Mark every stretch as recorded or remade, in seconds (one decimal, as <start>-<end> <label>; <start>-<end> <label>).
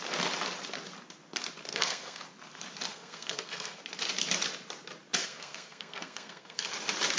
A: 0.0-1.7 recorded; 1.7-2.2 remade; 2.2-2.9 recorded; 2.9-3.8 remade; 3.8-5.2 recorded; 5.2-6.7 remade; 6.7-7.2 recorded